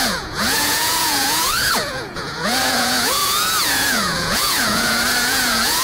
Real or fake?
fake